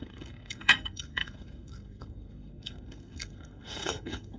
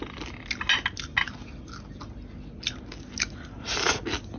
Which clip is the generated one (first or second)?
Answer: first